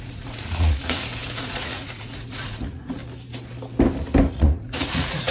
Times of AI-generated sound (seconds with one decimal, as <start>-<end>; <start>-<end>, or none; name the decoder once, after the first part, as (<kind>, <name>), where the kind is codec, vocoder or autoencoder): 0.0-3.0 (vocoder, Vocos); 4.3-5.3